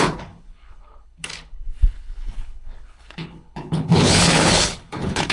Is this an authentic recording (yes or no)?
no